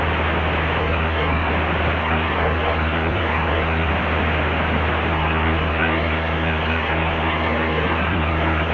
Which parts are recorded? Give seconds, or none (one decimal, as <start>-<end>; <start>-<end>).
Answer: 0.0-0.8; 1.5-2.0; 3.9-5.1